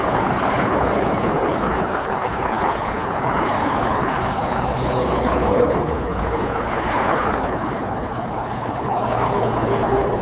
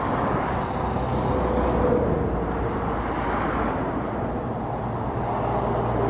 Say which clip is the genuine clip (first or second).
second